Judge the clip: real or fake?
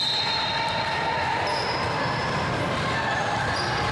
real